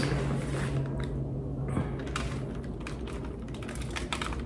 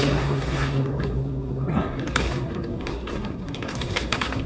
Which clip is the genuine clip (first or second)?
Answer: first